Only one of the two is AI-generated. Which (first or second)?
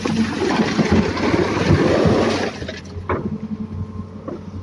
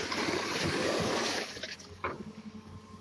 second